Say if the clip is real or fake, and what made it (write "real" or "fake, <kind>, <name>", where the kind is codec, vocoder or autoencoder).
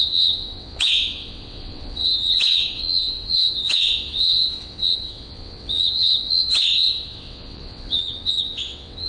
fake, vocoder, WaveNeXt